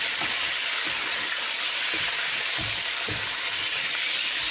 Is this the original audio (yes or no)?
yes